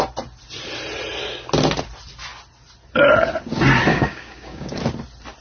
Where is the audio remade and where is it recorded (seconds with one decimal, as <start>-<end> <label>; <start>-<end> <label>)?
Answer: 0.0-3.9 recorded; 3.9-4.8 remade; 4.8-5.4 recorded